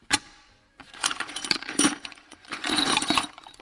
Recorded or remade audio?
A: remade